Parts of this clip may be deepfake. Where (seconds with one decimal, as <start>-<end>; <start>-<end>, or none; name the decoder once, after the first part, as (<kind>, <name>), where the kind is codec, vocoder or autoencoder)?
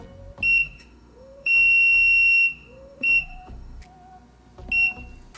0.6-3.8 (autoencoder, DAC-VAE)